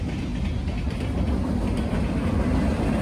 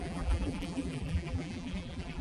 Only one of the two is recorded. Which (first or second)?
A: first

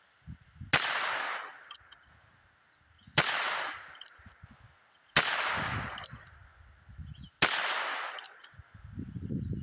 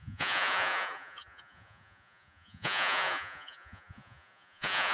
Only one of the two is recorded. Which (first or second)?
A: first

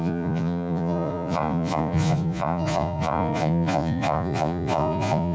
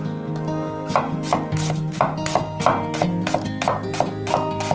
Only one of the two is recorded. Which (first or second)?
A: second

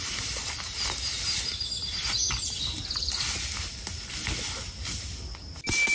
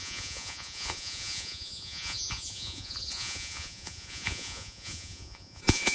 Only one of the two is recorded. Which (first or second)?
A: first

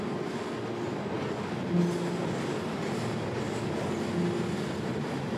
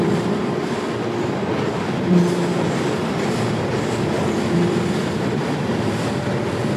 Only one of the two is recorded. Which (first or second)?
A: first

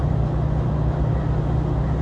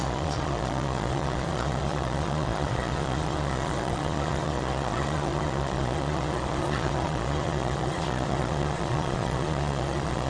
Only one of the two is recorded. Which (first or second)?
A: first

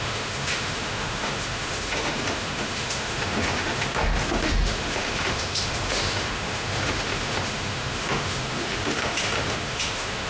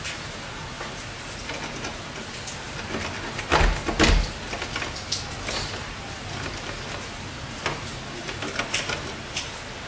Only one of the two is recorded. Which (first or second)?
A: second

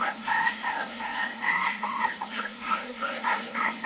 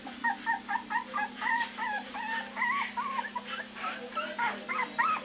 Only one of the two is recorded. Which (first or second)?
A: second